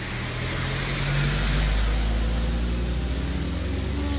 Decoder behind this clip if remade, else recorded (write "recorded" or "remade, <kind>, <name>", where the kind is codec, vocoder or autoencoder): recorded